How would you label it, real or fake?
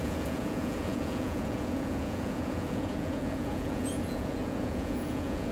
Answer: fake